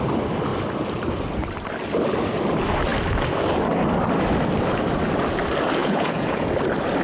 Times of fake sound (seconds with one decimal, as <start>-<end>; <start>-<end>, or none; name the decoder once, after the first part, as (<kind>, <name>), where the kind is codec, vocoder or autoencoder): 5.8-6.5 (vocoder, Vocos)